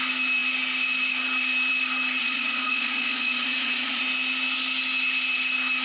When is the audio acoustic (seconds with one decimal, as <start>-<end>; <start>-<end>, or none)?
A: 0.0-2.2; 4.0-5.8